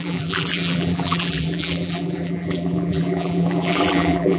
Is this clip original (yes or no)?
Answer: no